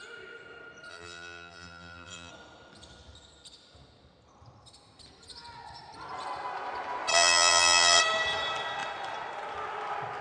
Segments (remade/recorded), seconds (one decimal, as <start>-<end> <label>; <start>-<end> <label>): 0.0-0.9 recorded; 0.9-2.3 remade; 2.3-7.1 recorded; 7.1-8.0 remade; 8.0-10.2 recorded